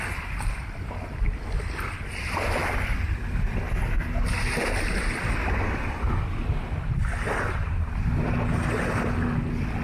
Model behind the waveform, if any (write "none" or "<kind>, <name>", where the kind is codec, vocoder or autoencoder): none